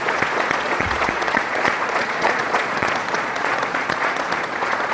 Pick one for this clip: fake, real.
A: fake